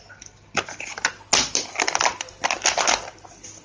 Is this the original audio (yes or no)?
yes